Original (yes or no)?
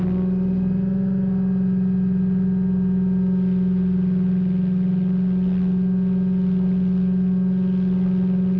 yes